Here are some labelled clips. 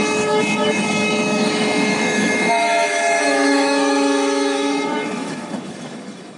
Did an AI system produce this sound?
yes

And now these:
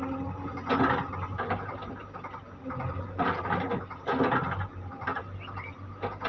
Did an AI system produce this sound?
no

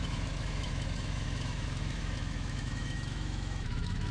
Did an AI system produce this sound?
yes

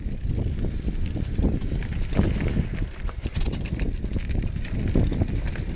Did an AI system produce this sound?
no